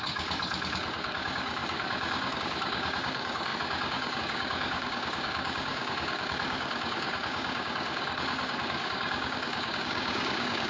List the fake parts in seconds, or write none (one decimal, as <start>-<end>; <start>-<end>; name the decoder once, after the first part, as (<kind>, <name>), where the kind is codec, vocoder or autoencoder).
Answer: 0.0-10.7 (codec, DAC)